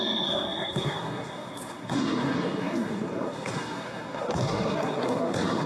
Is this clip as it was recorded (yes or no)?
no